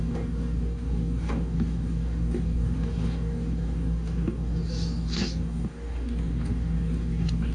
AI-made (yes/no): yes